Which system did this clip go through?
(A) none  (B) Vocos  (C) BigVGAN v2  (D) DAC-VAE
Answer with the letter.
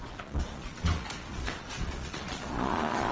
B